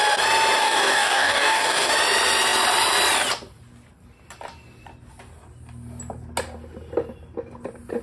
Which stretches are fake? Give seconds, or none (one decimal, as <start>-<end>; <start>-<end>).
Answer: 0.6-1.9